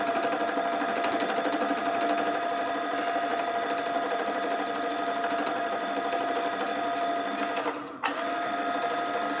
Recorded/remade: recorded